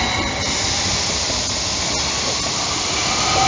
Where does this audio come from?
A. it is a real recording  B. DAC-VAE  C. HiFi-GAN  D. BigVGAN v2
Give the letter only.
A